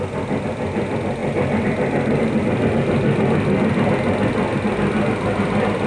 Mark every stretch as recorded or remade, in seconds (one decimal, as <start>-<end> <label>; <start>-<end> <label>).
0.0-5.9 recorded